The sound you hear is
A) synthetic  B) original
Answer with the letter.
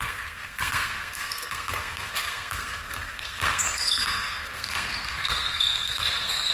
A